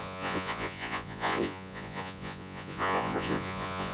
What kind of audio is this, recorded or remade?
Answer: remade